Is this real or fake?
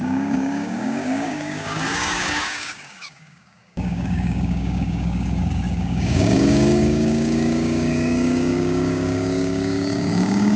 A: fake